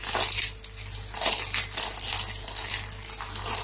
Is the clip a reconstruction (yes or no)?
no